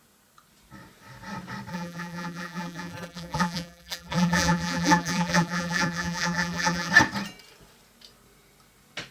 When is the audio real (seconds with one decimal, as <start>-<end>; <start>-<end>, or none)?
0.0-1.7; 6.9-9.1